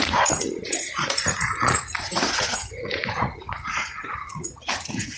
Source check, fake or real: fake